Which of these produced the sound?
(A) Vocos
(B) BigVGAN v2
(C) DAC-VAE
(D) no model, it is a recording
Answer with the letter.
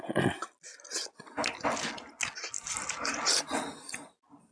D